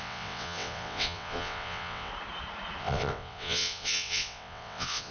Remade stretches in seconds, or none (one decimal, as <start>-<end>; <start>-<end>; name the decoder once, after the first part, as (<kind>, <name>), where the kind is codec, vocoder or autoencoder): 0.0-2.1 (vocoder, WaveNeXt); 2.8-5.1